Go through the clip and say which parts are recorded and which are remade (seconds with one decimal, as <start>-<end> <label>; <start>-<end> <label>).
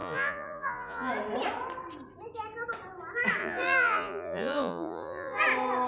0.0-1.1 remade; 1.1-3.4 recorded; 3.4-5.4 remade; 5.4-5.9 recorded